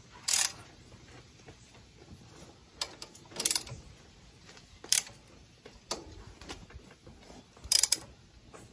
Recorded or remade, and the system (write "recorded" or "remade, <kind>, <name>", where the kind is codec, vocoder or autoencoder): remade, vocoder, BigVGAN v2